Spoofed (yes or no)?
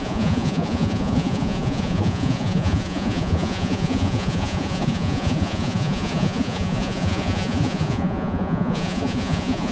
yes